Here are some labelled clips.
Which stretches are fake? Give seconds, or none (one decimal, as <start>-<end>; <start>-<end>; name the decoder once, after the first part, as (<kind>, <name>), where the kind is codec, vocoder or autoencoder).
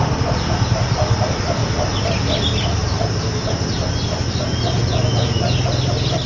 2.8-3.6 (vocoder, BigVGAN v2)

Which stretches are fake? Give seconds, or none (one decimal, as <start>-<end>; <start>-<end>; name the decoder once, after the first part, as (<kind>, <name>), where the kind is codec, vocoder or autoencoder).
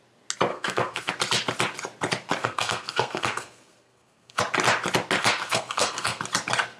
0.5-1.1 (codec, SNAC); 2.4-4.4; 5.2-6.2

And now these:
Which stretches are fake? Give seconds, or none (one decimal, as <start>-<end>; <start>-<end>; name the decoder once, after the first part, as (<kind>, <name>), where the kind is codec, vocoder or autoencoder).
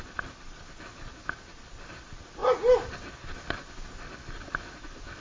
none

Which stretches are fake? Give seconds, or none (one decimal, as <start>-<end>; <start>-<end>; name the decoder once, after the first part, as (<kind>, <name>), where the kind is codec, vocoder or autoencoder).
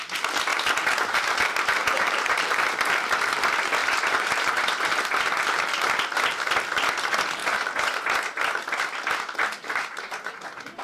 1.8-2.7 (vocoder, BigVGAN v2); 3.8-4.7